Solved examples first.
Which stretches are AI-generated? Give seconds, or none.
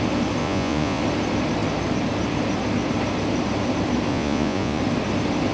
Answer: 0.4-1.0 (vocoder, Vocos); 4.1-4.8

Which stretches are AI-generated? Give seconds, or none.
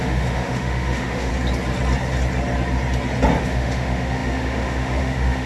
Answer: 0.0-1.3 (autoencoder, DAC-VAE); 3.4-5.5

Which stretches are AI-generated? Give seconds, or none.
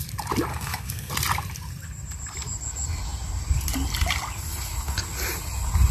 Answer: 0.5-1.1 (codec, SNAC)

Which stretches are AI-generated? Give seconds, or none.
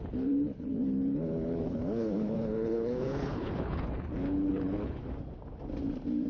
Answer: 0.0-5.0 (codec, HILCodec)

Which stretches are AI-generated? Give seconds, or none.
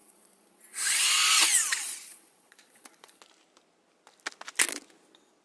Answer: 0.0-3.2 (vocoder, Vocos)